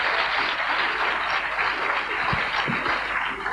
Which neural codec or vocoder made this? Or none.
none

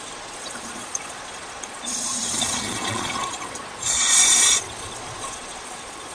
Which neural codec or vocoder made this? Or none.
vocoder, Vocos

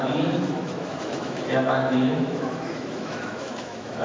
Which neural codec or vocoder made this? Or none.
autoencoder, DAC-VAE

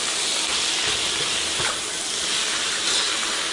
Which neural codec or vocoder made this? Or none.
none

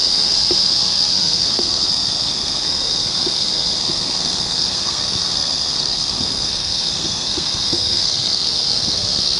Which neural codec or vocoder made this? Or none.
codec, SNAC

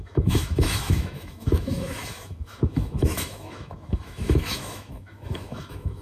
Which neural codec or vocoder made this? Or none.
autoencoder, DAC-VAE